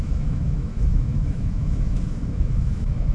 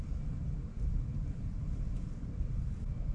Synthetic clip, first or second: first